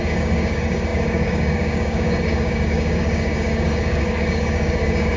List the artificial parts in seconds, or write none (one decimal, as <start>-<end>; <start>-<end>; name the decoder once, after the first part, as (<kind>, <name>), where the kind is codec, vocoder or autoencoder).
0.0-5.2 (codec, DAC)